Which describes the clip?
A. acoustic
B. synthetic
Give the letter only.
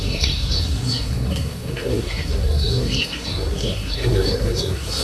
B